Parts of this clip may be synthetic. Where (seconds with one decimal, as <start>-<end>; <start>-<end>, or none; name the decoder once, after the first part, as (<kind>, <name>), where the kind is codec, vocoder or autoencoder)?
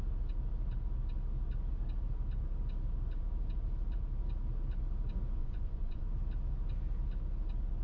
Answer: 5.4-6.0 (vocoder, Vocos)